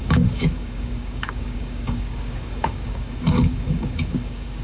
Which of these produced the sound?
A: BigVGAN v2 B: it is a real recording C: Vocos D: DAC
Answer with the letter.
D